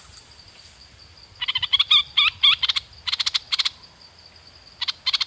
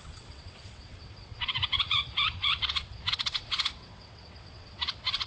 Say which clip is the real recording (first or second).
first